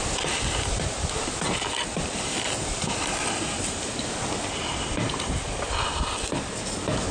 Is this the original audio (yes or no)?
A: yes